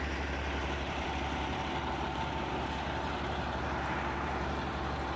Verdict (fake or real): fake